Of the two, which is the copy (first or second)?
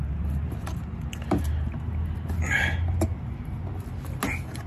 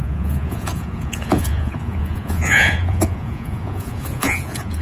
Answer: second